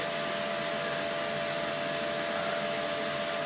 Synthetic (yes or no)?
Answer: no